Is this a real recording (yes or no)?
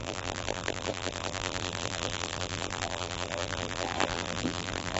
no